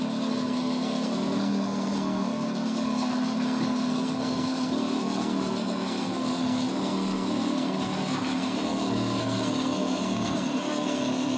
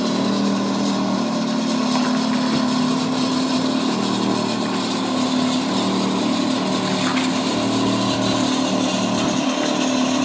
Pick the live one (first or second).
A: second